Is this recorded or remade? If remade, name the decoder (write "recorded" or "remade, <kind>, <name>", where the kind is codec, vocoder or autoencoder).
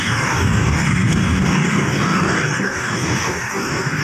remade, codec, DAC